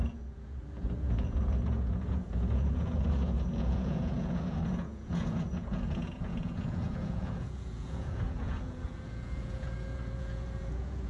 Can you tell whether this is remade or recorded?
remade